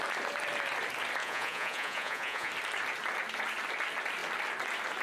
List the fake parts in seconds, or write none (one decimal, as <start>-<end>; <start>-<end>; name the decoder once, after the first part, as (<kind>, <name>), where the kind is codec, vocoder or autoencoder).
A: 1.2-2.5 (vocoder, Vocos)